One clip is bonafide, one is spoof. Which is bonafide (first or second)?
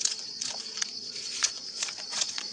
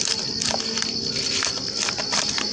second